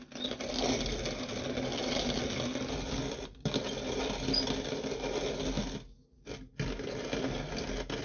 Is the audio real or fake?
real